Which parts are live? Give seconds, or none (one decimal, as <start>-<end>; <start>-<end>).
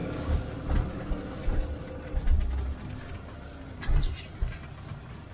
0.5-5.3